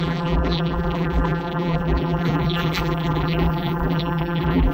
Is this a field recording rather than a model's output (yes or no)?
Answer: no